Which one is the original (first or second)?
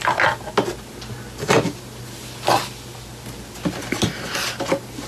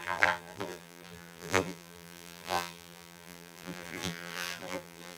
first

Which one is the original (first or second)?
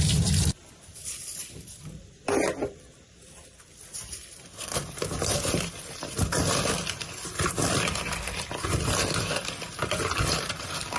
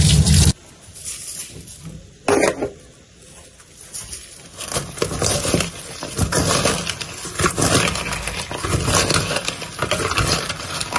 second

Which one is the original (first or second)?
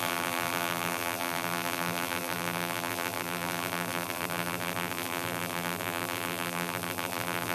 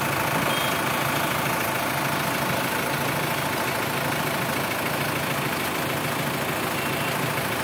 second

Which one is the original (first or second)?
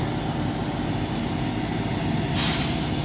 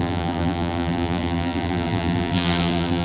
first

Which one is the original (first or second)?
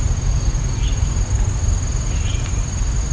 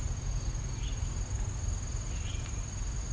second